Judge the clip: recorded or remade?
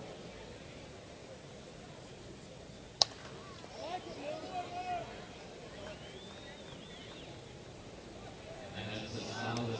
recorded